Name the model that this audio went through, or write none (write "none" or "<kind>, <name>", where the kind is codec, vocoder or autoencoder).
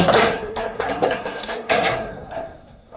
codec, SNAC